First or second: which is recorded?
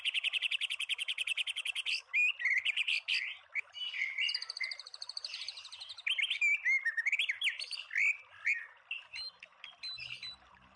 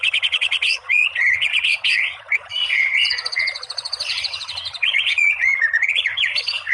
first